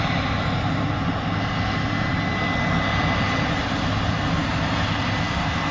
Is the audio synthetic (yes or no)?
no